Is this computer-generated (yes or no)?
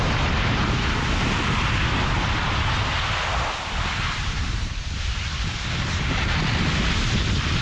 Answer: no